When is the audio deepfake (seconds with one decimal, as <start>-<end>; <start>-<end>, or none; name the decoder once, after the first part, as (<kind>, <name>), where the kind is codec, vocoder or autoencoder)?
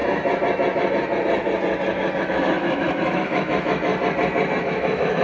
2.2-3.9 (autoencoder, DAC-VAE); 4.6-5.2